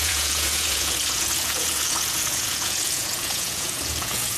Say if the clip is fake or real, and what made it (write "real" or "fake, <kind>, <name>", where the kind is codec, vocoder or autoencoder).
fake, vocoder, Vocos